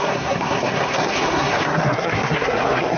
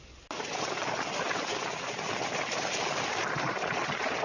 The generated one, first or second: first